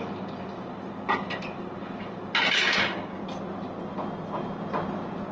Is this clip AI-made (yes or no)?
no